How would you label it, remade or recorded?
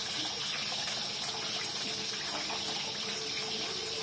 recorded